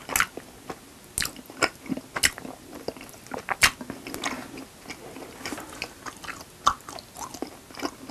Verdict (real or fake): real